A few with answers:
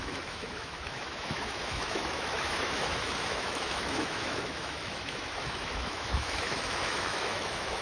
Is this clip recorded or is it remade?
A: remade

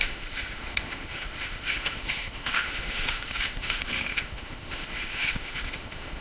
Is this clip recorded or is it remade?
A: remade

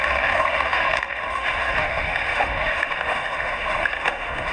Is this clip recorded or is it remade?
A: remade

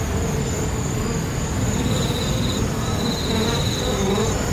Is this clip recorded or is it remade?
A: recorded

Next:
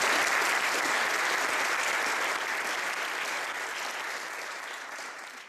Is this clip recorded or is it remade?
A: recorded